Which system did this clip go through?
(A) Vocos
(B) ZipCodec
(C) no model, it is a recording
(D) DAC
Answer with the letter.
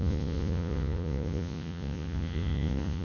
A